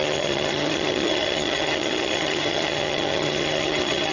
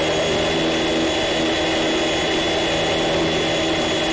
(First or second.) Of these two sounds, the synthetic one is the first